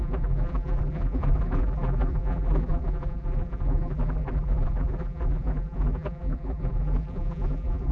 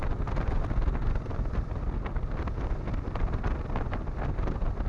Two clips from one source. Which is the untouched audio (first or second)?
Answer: second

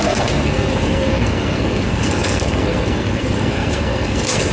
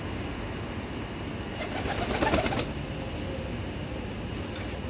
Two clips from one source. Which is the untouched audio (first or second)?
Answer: second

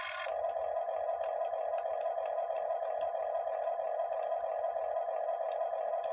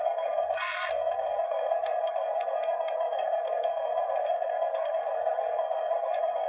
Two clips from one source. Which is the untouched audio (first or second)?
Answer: first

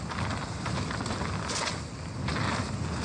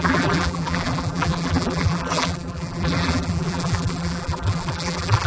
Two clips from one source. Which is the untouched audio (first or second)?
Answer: first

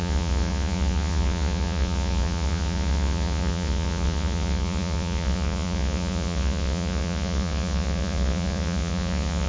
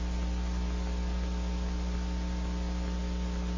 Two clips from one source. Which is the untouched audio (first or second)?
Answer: second